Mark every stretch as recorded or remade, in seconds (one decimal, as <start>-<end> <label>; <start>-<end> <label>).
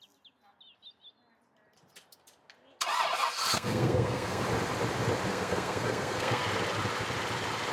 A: 0.0-3.5 recorded; 3.5-4.4 remade; 4.4-5.3 recorded; 5.3-6.4 remade; 6.4-7.7 recorded